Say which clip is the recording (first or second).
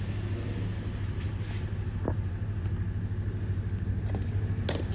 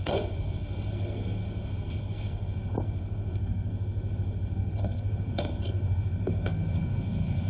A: first